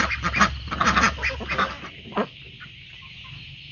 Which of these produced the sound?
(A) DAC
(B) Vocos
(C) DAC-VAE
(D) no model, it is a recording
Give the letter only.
D